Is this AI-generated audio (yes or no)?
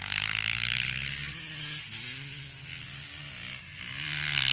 no